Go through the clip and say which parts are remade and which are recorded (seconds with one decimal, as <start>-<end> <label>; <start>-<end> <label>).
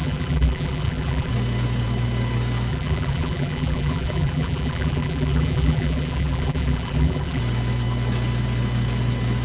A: 0.0-1.3 remade; 1.3-2.7 recorded; 2.7-7.4 remade; 7.4-9.4 recorded